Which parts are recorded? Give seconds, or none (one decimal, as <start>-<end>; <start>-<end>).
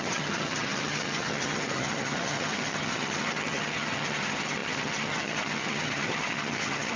none